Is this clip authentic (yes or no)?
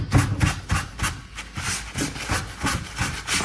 yes